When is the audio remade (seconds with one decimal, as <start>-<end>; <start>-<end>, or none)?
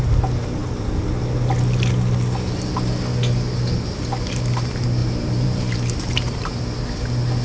5.0-6.6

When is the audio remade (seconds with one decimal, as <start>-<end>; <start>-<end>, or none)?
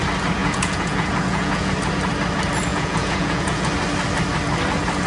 0.4-1.7; 2.7-3.7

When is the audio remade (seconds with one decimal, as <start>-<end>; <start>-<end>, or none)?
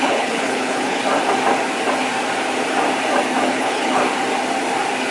0.0-1.0; 3.5-4.0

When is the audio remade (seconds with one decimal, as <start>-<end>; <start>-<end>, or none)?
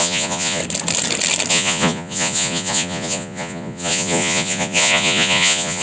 0.0-0.6; 1.5-5.8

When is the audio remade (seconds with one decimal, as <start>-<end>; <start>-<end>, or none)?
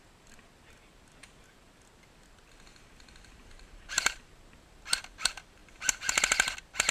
2.7-4.3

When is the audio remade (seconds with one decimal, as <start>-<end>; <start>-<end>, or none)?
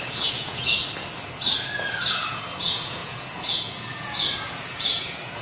0.0-0.8; 2.1-5.4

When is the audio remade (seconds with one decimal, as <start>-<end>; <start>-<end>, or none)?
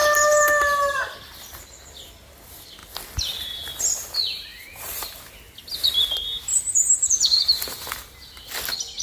4.5-5.2; 6.5-8.5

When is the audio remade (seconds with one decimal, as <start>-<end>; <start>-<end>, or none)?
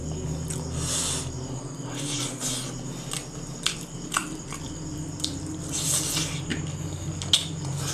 4.2-5.8